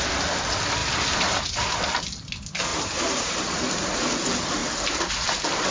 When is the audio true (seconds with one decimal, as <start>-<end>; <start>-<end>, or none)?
0.0-0.8; 1.7-2.7; 3.6-5.7